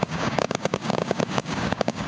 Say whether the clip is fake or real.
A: fake